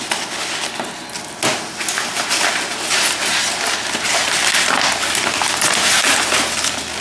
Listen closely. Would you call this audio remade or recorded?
recorded